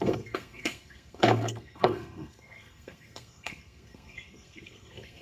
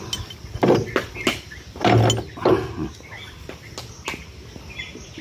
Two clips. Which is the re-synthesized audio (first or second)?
first